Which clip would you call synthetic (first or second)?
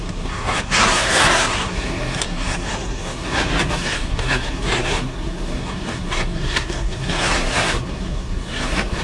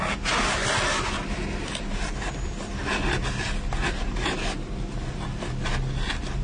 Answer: first